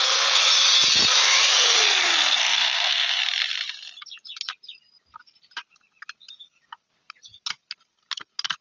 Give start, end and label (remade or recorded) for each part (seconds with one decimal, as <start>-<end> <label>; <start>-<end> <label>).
0.0-0.5 remade; 0.5-2.4 recorded; 2.4-3.2 remade; 3.2-8.6 recorded